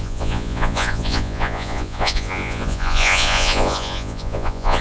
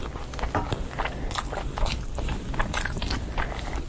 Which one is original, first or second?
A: second